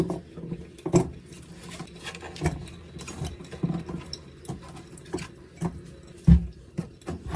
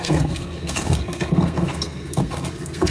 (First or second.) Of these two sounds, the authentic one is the first